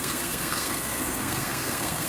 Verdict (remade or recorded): remade